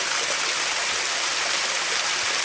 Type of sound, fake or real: real